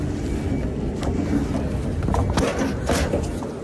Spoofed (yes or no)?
no